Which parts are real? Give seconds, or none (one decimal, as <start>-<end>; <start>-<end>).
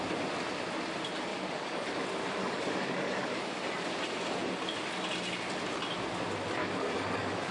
0.0-1.3; 1.9-2.4; 3.6-6.6